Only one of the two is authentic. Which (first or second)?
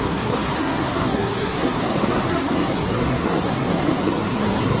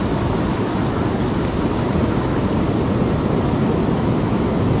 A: second